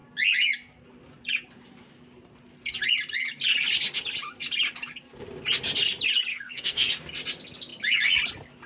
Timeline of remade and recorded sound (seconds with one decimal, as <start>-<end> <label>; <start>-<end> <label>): 0.0-6.3 recorded; 6.3-6.9 remade; 6.9-8.7 recorded